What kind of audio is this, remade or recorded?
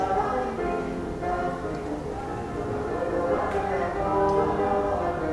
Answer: recorded